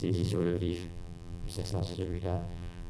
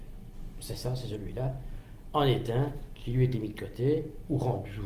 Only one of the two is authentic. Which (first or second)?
second